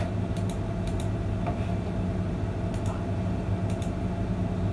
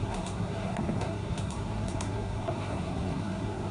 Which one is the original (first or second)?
first